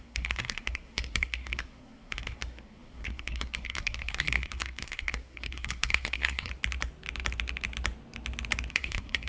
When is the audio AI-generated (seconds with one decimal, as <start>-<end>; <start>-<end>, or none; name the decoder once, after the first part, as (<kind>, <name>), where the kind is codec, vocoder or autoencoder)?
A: 0.0-6.5 (codec, SNAC); 8.7-9.3